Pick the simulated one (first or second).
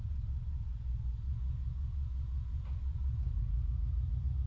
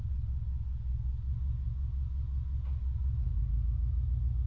first